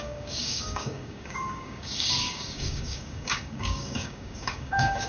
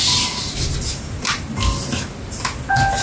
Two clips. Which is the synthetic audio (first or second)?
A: first